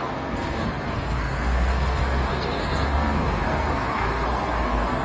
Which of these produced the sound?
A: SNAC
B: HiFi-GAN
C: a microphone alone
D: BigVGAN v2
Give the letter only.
A